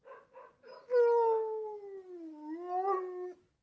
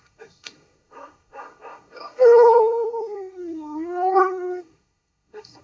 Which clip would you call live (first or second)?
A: first